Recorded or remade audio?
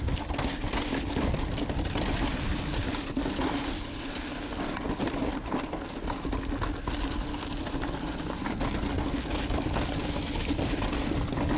recorded